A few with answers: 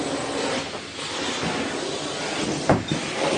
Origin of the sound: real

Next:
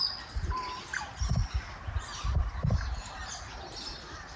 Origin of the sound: real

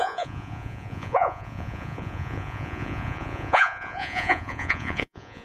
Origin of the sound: fake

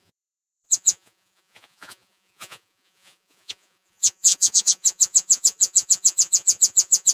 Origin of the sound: fake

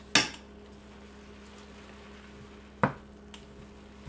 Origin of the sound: real